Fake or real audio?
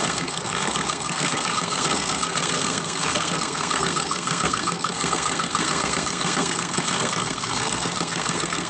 fake